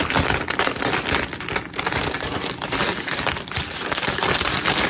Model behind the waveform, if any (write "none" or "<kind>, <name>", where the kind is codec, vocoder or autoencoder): none